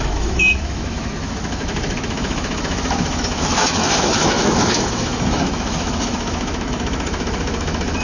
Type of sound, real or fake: fake